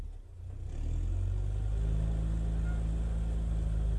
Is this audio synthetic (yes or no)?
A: no